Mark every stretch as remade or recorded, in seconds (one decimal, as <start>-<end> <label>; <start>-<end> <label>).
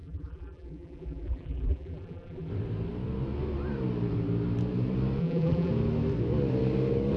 0.0-2.5 remade; 2.5-5.2 recorded; 5.2-5.7 remade; 5.7-7.2 recorded